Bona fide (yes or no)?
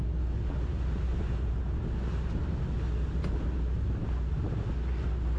yes